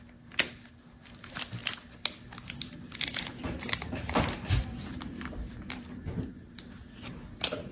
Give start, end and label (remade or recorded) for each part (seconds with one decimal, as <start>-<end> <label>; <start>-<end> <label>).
0.0-7.7 recorded